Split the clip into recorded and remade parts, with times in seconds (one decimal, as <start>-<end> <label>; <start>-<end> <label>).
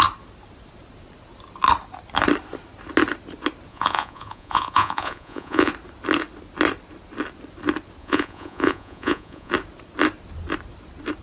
0.0-3.7 recorded; 3.7-5.7 remade; 5.7-8.0 recorded; 8.0-9.5 remade; 9.5-11.2 recorded